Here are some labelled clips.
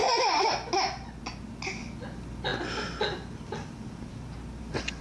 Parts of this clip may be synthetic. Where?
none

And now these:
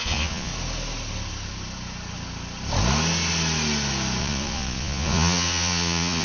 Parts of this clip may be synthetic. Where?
0.0-0.5 (vocoder, Vocos); 4.2-6.2

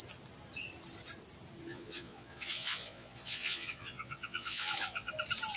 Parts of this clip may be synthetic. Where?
1.7-5.1 (vocoder, Vocos)

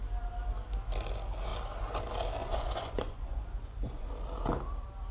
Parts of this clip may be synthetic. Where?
2.4-4.1 (vocoder, Vocos)